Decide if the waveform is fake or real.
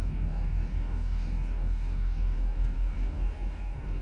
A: fake